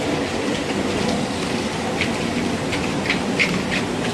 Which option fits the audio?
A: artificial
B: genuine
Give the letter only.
B